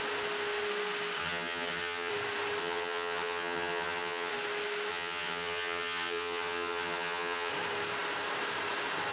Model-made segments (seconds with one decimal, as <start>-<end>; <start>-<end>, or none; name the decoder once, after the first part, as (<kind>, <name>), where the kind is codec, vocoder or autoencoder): 1.2-2.1 (vocoder, HiFi-GAN); 2.6-4.3; 4.9-7.5